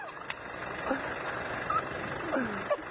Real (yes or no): yes